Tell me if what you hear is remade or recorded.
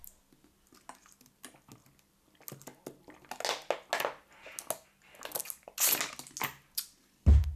recorded